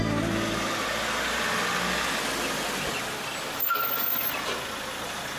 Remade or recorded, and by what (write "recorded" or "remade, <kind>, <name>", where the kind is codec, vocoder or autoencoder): recorded